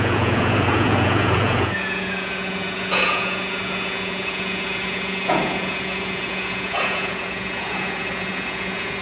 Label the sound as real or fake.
fake